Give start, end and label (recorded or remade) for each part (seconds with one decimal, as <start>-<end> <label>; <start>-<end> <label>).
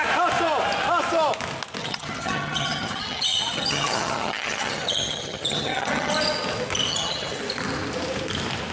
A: 0.0-1.8 recorded; 1.8-6.1 remade; 6.1-6.9 recorded; 6.9-7.4 remade; 7.4-8.7 recorded